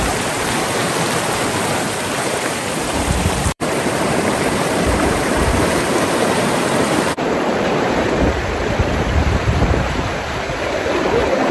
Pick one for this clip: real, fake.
fake